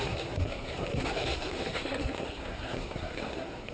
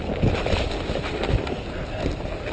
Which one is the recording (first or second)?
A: second